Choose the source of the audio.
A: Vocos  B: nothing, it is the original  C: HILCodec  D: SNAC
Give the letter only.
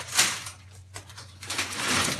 A